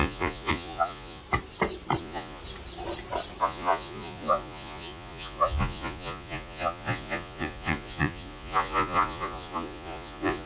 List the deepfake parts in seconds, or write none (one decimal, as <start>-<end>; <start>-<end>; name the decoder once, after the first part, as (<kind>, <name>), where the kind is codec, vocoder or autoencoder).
0.0-1.2 (vocoder, Vocos); 2.0-2.4; 3.4-10.5